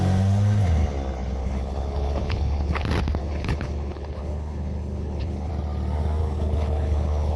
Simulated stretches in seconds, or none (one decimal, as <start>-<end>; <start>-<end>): 1.4-2.8; 3.2-5.5; 6.2-7.4